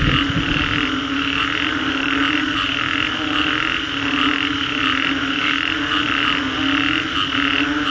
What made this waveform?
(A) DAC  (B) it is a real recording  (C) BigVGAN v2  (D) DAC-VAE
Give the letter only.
B